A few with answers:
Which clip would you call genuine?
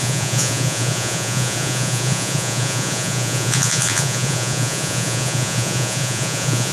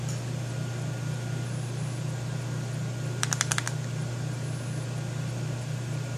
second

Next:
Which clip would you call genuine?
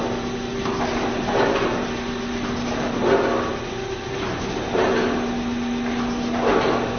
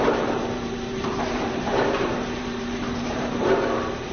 first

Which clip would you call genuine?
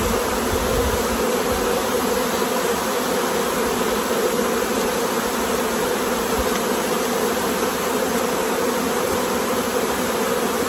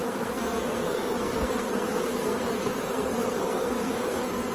first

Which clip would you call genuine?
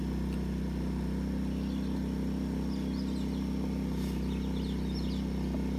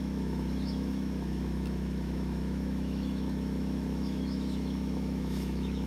first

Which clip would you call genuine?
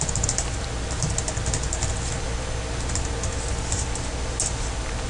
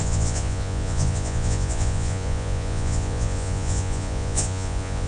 first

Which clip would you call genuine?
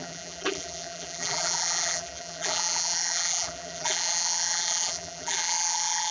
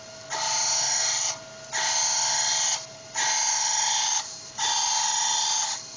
second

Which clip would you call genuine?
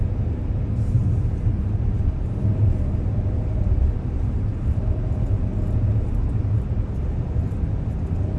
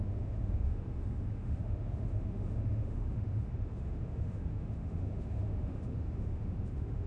first